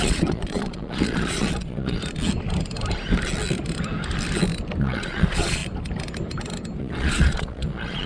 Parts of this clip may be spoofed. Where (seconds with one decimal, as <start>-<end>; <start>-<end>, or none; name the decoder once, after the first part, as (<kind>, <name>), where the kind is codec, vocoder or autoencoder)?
0.0-2.0 (vocoder, Vocos); 4.8-5.6; 6.8-8.1